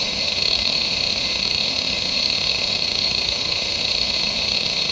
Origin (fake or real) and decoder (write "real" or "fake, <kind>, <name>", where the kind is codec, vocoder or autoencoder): fake, autoencoder, DAC-VAE